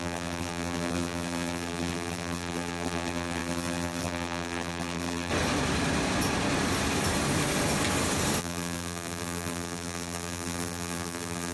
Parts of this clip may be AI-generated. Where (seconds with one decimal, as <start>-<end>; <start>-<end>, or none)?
0.0-5.3; 8.4-11.5